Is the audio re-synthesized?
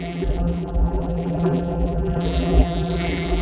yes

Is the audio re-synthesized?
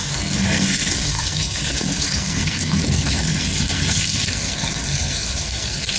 yes